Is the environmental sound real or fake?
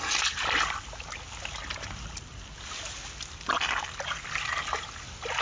real